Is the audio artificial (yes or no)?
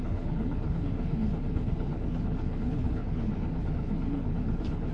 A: yes